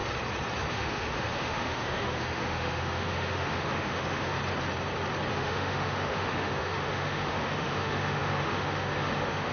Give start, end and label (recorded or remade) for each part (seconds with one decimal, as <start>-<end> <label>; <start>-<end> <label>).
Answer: 0.0-0.7 recorded; 0.7-4.4 remade; 4.4-5.3 recorded; 5.3-9.5 remade